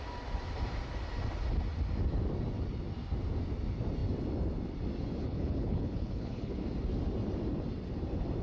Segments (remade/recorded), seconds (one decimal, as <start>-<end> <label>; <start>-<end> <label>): 0.0-5.2 recorded; 5.2-6.6 remade; 6.6-8.4 recorded